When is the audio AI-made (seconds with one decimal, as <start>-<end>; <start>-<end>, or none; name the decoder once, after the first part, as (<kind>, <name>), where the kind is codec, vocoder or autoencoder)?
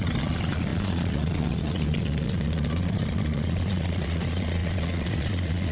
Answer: 0.0-5.7 (vocoder, Vocos)